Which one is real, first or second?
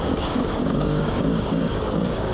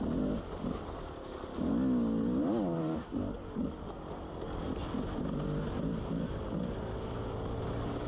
second